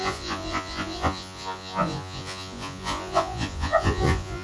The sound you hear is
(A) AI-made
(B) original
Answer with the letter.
A